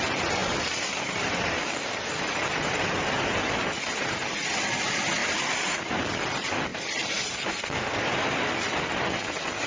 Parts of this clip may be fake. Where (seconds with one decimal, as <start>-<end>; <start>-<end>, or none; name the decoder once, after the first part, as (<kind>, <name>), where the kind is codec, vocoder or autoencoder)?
0.4-4.8 (vocoder, BigVGAN v2); 5.2-6.0; 6.7-8.4